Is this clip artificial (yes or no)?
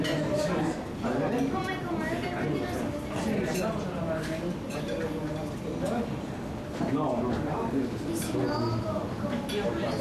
no